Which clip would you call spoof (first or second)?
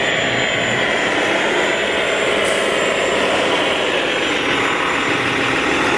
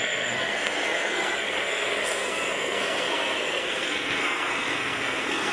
second